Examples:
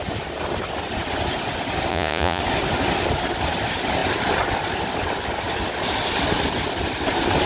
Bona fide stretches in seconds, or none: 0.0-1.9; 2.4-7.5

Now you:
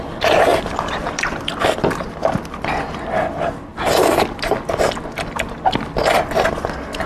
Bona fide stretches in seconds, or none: 0.0-0.5; 2.3-7.1